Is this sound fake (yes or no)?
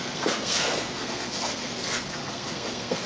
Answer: yes